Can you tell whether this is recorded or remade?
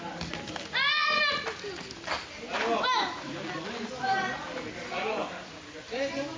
recorded